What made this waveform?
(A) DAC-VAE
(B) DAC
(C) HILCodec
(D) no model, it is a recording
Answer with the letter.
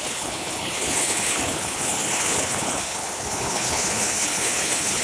C